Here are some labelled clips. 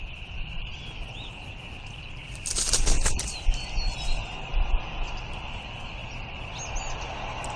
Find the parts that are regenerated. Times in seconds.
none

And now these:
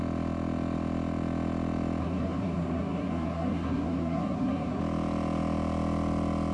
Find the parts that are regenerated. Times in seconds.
2.0-4.8 (codec, SNAC)

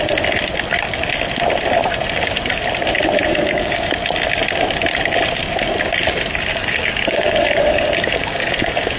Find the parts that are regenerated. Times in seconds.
3.3-3.9 (codec, DAC); 6.5-9.0

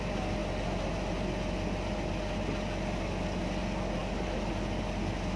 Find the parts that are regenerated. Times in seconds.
none

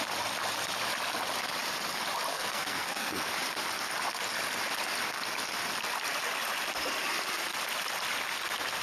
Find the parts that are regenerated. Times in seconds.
2.3-3.3 (codec, SNAC)